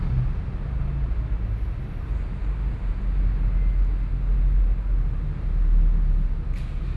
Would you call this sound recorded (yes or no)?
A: yes